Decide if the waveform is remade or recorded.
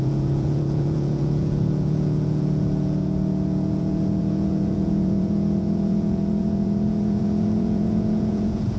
remade